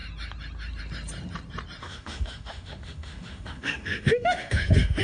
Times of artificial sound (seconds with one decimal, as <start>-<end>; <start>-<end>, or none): 1.8-5.0